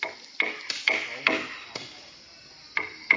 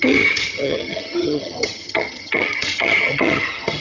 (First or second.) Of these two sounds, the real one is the first